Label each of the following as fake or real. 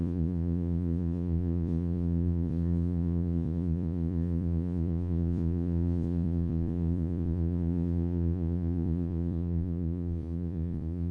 fake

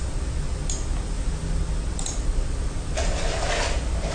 real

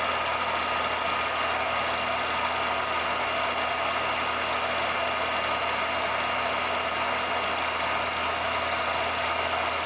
real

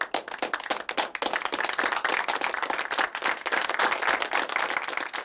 real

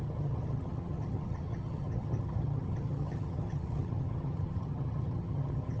fake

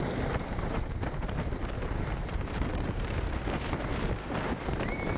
fake